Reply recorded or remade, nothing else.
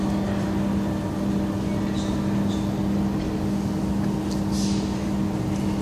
recorded